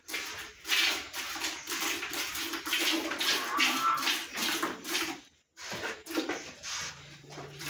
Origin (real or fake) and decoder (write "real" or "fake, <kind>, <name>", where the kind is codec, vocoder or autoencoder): fake, vocoder, BigVGAN v2